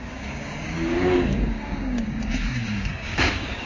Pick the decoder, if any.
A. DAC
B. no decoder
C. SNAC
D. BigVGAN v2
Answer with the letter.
A